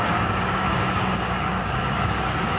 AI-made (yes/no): yes